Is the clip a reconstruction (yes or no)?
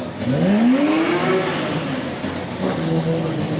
no